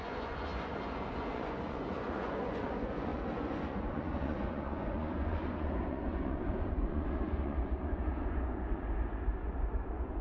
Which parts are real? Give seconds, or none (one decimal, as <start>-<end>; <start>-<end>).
none